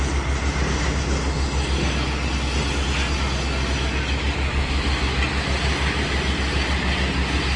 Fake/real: real